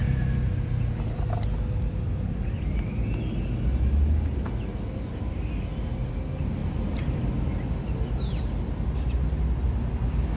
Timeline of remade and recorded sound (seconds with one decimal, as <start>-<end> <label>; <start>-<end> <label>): 0.0-6.6 recorded; 6.6-7.2 remade; 7.2-10.4 recorded